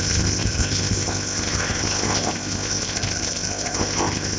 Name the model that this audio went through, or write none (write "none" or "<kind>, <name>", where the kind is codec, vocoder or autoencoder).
codec, ZipCodec